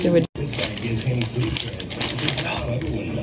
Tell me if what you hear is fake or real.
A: real